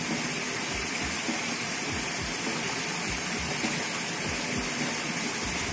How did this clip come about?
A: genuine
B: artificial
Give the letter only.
A